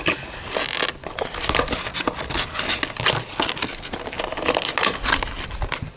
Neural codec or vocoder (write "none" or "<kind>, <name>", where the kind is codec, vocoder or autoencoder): none